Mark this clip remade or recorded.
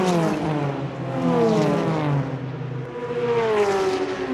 recorded